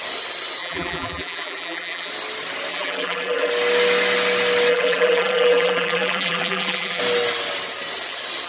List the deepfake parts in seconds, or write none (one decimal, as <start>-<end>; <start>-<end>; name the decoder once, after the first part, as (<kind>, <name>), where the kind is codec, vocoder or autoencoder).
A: 0.6-2.1 (vocoder, BigVGAN v2); 2.7-3.5; 4.7-7.0